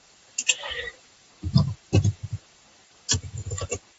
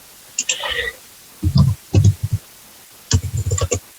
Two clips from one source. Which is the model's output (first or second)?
first